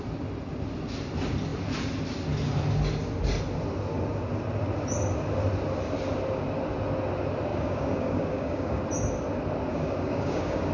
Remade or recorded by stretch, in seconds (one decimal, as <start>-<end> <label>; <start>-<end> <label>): 0.0-7.5 recorded; 7.5-8.8 remade; 8.8-9.7 recorded; 9.7-10.7 remade